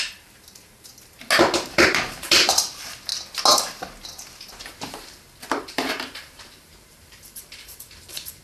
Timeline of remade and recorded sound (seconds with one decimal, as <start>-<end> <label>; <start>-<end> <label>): 0.0-0.9 remade; 0.9-1.6 recorded; 1.6-3.1 remade; 3.1-5.6 recorded; 5.6-8.4 remade